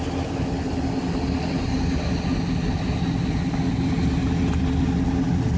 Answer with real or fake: real